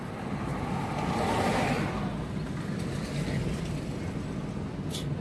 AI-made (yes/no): no